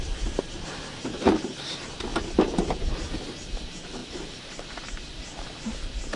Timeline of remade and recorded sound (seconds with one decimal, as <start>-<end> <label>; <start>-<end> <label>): 0.0-2.1 remade; 2.1-3.5 recorded; 3.5-6.2 remade